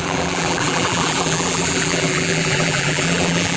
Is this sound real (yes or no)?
no